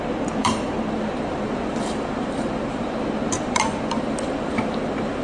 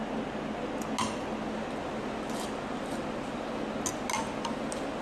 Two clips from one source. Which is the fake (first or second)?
first